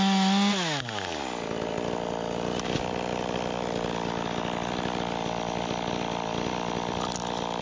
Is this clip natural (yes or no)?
yes